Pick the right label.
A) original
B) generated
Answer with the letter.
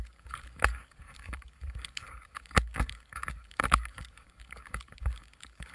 B